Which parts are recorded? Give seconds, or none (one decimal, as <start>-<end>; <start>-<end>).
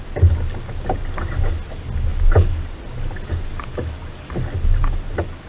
0.0-5.5